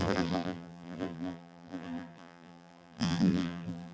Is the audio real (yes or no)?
no